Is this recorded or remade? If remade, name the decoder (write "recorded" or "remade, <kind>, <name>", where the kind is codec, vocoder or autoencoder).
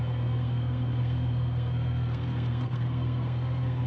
remade, codec, SNAC